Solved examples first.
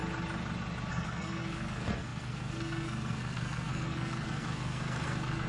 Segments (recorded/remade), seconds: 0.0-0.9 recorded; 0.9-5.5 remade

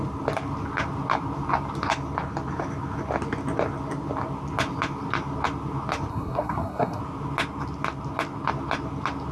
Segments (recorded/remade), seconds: 0.0-6.1 recorded; 6.1-7.0 remade; 7.0-9.3 recorded

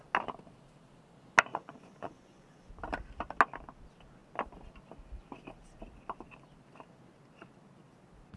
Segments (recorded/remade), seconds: 0.0-1.5 recorded; 1.5-2.7 remade; 2.7-8.4 recorded